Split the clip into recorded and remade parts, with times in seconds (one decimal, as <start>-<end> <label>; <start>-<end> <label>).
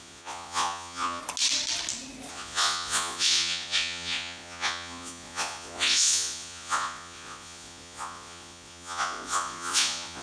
0.0-1.2 remade; 1.2-2.3 recorded; 2.3-10.2 remade